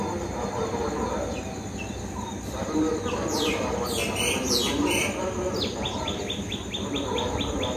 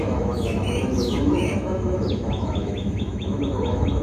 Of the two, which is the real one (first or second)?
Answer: first